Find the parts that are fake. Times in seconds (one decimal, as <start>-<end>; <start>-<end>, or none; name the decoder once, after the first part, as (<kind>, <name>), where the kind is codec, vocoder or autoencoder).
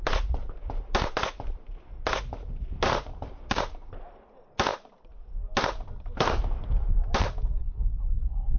7.6-8.6 (codec, HILCodec)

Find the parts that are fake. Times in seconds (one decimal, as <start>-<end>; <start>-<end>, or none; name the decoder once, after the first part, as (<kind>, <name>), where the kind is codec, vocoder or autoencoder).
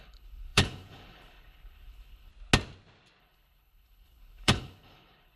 0.0-2.3 (codec, HILCodec); 3.2-5.4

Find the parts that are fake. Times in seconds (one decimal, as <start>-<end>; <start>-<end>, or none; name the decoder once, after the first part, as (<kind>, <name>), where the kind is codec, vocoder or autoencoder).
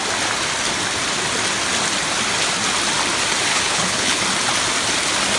3.5-4.2 (codec, HILCodec)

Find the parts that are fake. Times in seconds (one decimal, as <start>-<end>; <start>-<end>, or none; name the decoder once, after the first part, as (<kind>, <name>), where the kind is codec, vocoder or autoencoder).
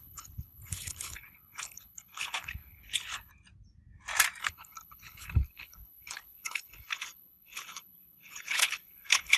0.0-3.3 (codec, HILCodec); 4.4-9.4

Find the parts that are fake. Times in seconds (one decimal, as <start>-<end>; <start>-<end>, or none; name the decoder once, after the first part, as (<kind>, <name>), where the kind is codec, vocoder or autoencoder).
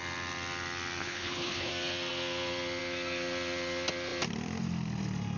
1.0-1.7 (codec, HILCodec)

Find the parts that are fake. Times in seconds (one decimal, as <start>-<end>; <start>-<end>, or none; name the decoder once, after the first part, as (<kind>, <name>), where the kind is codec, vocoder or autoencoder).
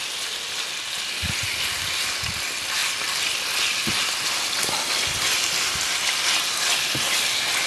none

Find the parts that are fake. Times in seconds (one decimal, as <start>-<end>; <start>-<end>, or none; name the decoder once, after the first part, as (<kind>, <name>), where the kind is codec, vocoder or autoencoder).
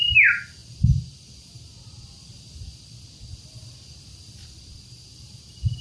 none